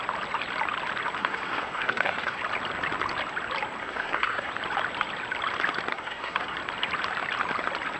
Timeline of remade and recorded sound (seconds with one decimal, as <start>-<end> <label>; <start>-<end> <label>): 0.0-1.2 recorded; 1.2-2.4 remade; 2.4-3.8 recorded; 3.8-4.5 remade; 4.5-5.9 recorded; 5.9-6.6 remade; 6.6-8.0 recorded